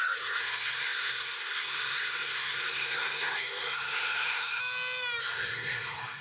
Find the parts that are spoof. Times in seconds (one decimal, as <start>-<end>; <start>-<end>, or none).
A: 0.0-4.6; 5.2-6.2